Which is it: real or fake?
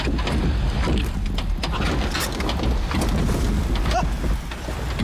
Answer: real